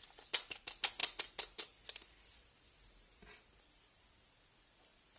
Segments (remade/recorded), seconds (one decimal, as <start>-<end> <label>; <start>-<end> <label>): 0.0-5.2 recorded